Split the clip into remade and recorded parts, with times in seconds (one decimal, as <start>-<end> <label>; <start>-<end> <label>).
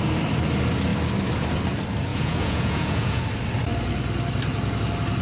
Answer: 0.0-2.1 recorded; 2.1-3.2 remade; 3.2-5.2 recorded